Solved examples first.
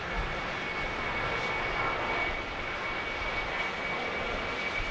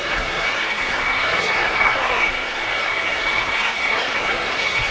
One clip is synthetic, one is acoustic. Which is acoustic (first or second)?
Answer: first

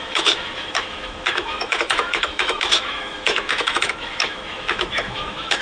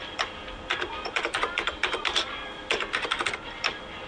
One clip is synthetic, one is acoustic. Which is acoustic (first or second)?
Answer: second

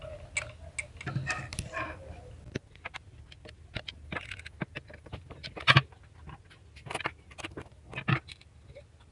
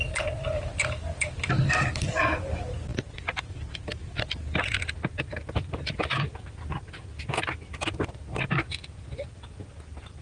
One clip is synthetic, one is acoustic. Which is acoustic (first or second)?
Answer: first